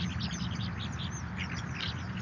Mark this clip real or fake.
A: real